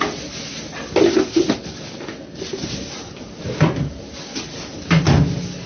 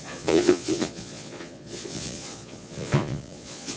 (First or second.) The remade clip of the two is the second